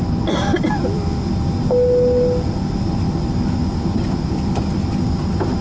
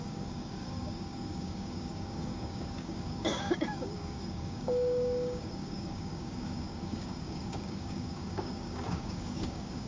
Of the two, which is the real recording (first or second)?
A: first